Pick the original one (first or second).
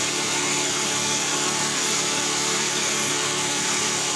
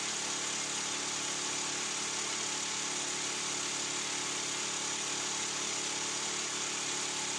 second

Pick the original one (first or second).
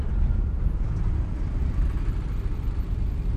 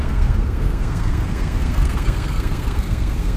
first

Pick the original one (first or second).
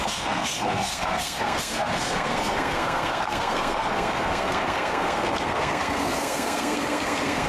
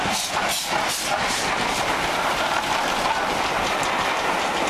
second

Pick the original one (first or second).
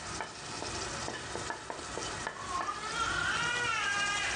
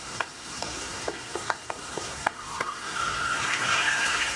first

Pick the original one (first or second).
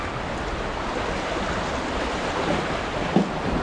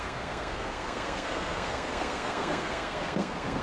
first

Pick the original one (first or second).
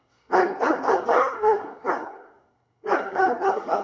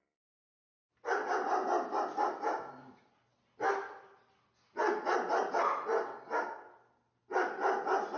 second